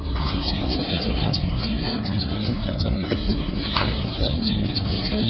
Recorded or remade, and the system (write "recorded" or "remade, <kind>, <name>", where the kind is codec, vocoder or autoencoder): remade, codec, SNAC